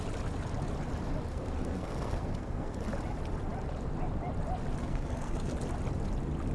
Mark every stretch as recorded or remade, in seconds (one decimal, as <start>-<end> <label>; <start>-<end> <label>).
0.0-1.3 recorded; 1.3-2.8 remade; 2.8-4.8 recorded; 4.8-5.5 remade; 5.5-6.5 recorded

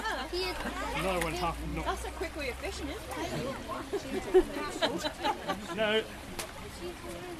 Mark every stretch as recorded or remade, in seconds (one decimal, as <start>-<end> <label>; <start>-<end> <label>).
0.0-7.4 recorded

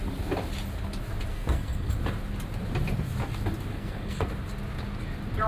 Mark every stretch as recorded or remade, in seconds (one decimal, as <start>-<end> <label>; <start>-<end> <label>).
0.0-1.3 recorded; 1.3-1.9 remade; 1.9-3.7 recorded; 3.7-4.3 remade; 4.3-5.5 recorded